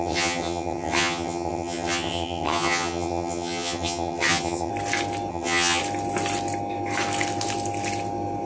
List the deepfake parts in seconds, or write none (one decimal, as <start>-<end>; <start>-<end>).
0.0-4.7; 5.3-5.8